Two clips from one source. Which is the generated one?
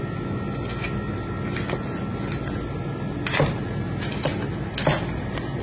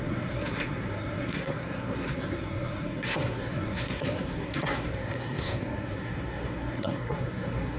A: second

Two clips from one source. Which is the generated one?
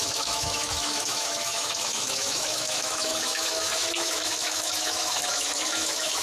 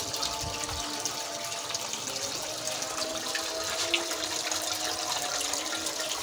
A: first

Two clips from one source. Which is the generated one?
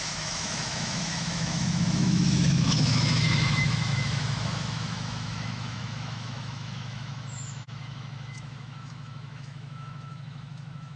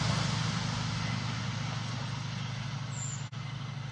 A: first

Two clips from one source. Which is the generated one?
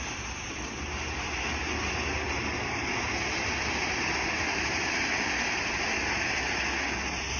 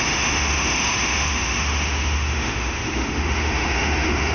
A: second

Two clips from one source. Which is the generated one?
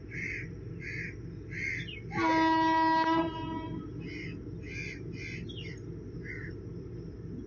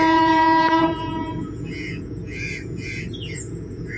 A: second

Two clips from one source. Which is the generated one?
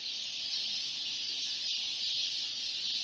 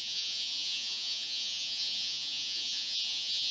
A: second